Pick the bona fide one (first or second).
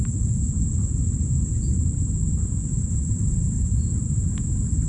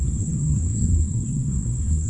first